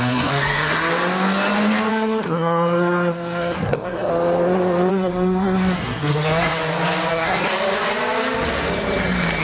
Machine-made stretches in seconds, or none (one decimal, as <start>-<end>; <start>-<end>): 0.0-0.9; 1.9-4.1; 4.9-6.6; 7.1-7.5